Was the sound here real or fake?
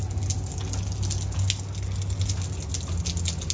real